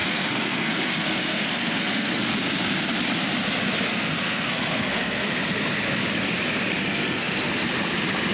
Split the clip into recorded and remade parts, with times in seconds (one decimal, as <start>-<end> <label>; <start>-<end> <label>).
0.0-2.2 remade; 2.2-3.9 recorded; 3.9-5.4 remade; 5.4-6.8 recorded; 6.8-7.5 remade; 7.5-8.3 recorded